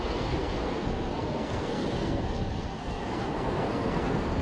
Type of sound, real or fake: fake